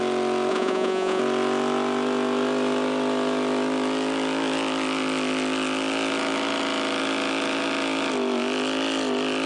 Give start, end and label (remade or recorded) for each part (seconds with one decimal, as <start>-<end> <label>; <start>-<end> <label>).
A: 0.0-0.5 recorded; 0.5-1.2 remade; 1.2-9.5 recorded